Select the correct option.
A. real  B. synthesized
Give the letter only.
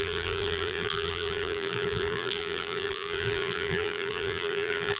B